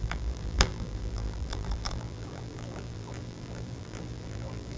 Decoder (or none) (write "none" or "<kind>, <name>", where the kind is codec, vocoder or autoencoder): vocoder, BigVGAN v2